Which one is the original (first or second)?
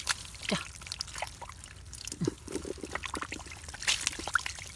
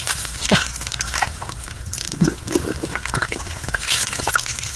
first